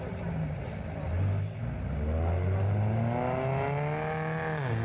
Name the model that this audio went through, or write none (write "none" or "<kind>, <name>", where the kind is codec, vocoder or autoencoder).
none